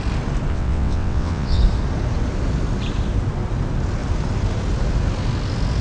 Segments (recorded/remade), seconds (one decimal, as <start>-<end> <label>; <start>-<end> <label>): 0.0-0.5 recorded; 0.5-1.6 remade; 1.6-5.8 recorded